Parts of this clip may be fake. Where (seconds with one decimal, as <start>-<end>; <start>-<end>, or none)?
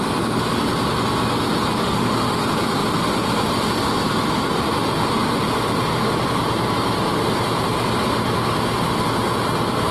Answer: 1.8-2.4